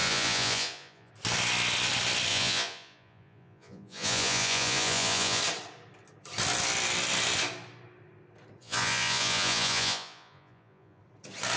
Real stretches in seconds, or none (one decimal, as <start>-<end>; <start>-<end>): 1.1-2.3; 5.4-8.6; 11.0-11.6